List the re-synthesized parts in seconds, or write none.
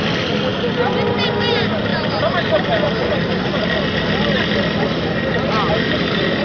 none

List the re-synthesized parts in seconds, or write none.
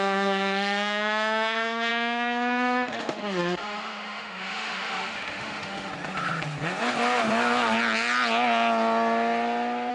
0.0-5.9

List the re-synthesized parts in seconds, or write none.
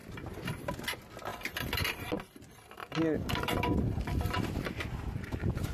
1.3-2.0; 2.8-4.9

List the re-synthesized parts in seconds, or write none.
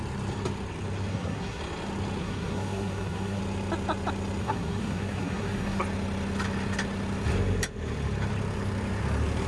1.1-1.6; 2.2-3.4; 4.4-5.8